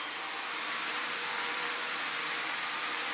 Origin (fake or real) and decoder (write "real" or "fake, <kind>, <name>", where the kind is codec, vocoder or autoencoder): fake, vocoder, BigVGAN v2